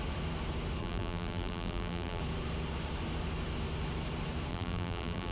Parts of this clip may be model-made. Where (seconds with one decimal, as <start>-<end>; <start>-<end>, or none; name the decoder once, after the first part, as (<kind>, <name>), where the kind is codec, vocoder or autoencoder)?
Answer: 0.8-2.2 (vocoder, BigVGAN v2); 4.5-5.3